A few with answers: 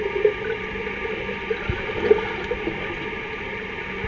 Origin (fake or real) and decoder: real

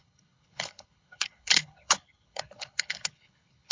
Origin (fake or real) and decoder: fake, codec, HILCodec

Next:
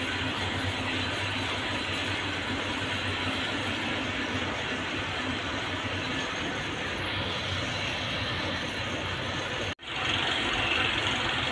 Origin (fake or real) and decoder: real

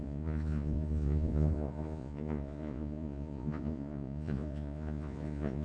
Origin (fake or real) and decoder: fake, vocoder, Vocos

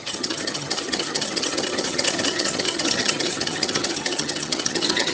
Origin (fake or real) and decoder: fake, vocoder, HiFi-GAN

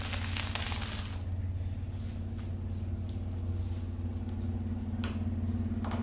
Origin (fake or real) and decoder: real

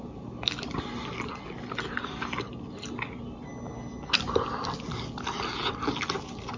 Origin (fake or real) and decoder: real